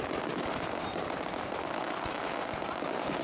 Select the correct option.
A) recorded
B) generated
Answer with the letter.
A